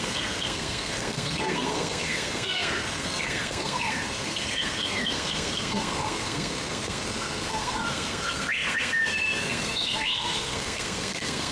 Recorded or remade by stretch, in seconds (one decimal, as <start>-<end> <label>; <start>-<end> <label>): 0.0-11.5 remade